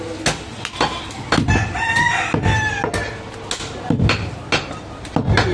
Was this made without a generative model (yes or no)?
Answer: yes